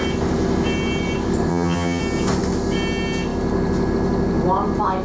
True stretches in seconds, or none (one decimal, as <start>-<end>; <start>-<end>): 0.0-1.5; 2.0-5.0